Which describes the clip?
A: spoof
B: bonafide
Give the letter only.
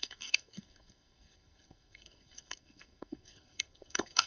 A